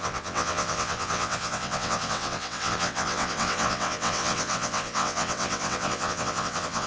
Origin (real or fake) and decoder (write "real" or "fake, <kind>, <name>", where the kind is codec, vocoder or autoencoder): fake, vocoder, WaveNeXt